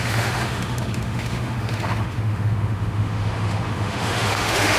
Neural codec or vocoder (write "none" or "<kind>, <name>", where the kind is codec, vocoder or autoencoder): autoencoder, DAC-VAE